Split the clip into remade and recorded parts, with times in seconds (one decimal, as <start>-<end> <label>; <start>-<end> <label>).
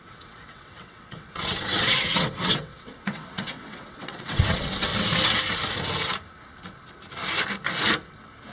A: 0.0-4.9 remade; 4.9-8.5 recorded